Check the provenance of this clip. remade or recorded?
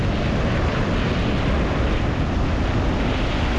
recorded